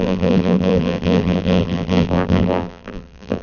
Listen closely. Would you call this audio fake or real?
fake